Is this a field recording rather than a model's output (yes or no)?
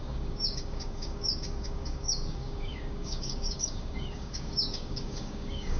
no